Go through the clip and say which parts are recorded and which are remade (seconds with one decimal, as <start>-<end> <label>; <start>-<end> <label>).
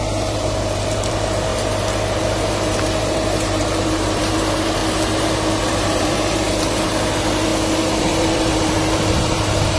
0.0-1.5 remade; 1.5-2.2 recorded; 2.2-4.8 remade; 4.8-5.6 recorded; 5.6-7.5 remade; 7.5-8.0 recorded; 8.0-9.8 remade